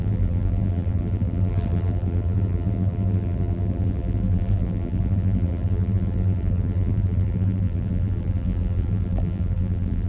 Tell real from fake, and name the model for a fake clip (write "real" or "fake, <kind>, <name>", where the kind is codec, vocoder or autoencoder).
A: fake, vocoder, BigVGAN v2